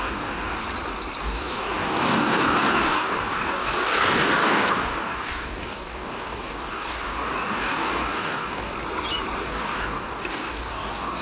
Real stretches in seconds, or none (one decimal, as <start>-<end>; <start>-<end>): 0.6-1.2; 8.7-9.4